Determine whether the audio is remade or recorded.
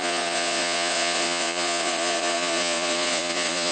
remade